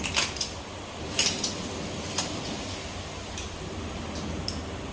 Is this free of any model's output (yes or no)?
yes